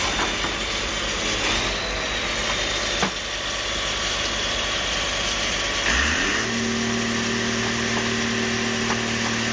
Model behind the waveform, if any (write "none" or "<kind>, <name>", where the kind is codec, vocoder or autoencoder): none